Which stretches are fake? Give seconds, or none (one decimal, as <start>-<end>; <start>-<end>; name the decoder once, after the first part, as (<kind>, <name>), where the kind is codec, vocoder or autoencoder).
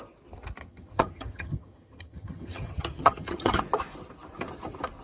0.6-3.6 (vocoder, HiFi-GAN)